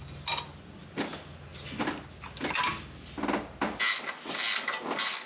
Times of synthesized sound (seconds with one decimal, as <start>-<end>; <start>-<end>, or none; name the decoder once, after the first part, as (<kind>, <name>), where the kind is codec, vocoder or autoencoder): none